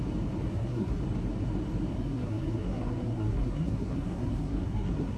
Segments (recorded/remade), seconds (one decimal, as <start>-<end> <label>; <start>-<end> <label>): 0.0-0.5 recorded; 0.5-1.0 remade; 1.0-1.9 recorded; 1.9-5.2 remade